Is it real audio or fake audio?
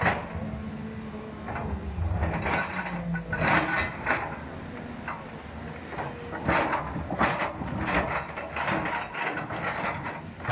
real